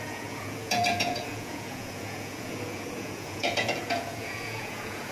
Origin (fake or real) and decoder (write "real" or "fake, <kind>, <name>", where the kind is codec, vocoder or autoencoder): fake, vocoder, Vocos